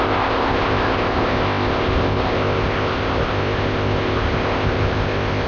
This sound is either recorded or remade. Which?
remade